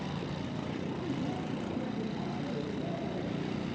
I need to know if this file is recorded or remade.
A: recorded